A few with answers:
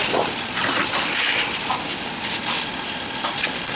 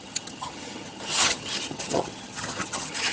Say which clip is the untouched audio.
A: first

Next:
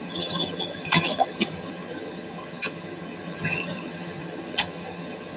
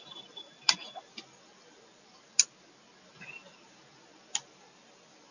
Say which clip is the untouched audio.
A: second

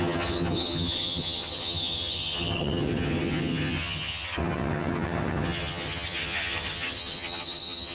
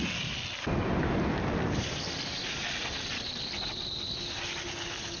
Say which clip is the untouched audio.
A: second